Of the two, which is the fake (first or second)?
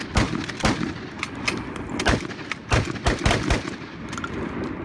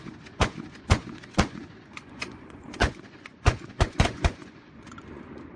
second